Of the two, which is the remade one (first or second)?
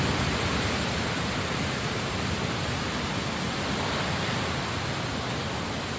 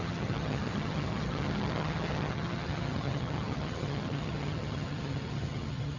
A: second